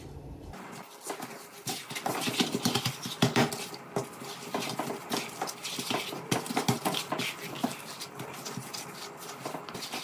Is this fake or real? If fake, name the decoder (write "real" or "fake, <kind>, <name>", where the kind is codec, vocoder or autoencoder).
real